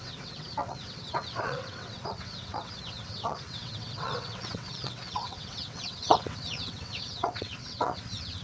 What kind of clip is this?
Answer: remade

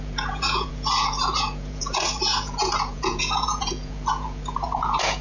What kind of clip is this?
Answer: remade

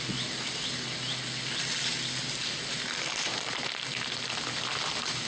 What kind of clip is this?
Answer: recorded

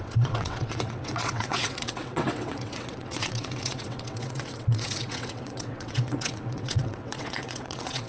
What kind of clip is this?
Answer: remade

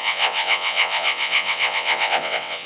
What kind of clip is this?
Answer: remade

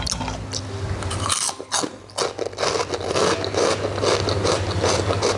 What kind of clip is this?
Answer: recorded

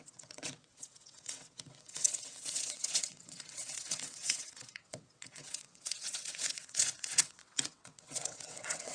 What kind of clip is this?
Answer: remade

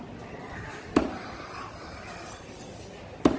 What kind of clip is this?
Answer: recorded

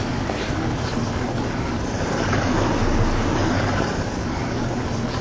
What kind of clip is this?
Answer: remade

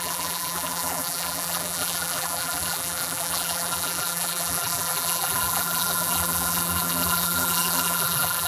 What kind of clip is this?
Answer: remade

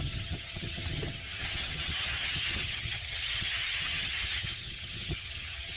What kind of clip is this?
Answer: remade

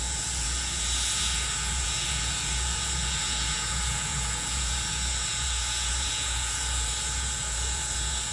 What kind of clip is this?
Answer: remade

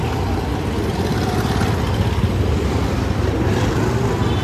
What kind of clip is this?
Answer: recorded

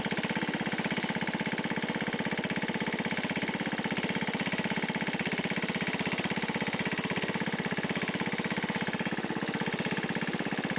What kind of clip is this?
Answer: recorded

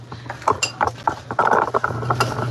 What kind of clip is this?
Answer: recorded